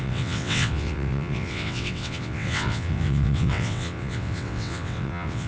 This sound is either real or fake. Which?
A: fake